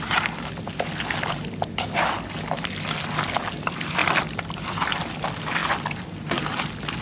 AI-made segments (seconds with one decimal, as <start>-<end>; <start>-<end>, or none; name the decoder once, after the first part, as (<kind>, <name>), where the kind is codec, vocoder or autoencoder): 4.0-4.8 (vocoder, BigVGAN v2)